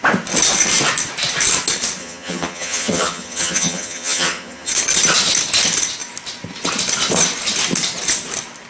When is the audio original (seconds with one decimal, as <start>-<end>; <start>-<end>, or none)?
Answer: 0.0-2.0; 4.7-8.7